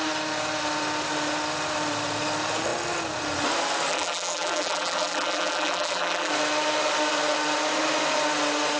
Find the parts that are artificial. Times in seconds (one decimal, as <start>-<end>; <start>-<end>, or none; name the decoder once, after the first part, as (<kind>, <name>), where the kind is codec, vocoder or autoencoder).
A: 3.9-6.3 (vocoder, BigVGAN v2)